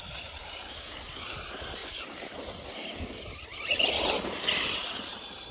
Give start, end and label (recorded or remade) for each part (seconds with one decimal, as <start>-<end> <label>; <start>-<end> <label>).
0.0-0.4 recorded; 0.4-0.9 remade; 0.9-5.5 recorded